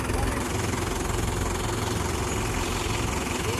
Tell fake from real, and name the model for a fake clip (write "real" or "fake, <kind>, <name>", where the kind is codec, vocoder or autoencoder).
real